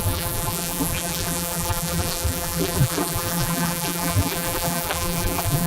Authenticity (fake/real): fake